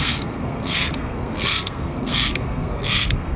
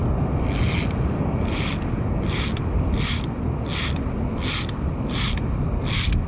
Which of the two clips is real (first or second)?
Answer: second